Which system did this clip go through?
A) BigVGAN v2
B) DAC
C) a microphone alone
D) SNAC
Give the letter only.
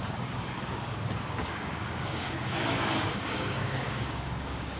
B